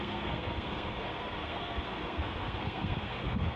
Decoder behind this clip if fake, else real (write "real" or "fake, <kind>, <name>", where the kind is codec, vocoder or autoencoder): fake, codec, SNAC